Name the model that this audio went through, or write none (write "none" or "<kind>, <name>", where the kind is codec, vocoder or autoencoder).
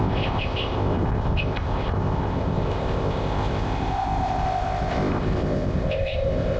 codec, ZipCodec